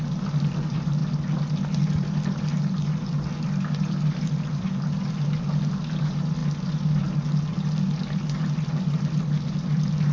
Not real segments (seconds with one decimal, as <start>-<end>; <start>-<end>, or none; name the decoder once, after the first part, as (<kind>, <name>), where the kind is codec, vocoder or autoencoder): none